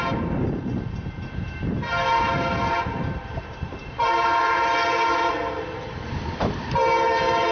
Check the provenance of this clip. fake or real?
fake